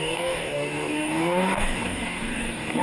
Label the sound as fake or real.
fake